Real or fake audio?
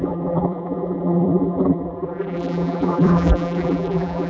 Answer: fake